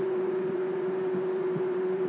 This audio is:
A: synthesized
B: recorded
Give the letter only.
A